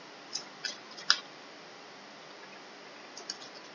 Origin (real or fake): real